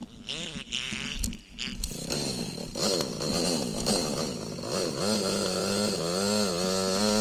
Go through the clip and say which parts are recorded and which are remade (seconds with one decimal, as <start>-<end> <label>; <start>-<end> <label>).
0.0-7.2 recorded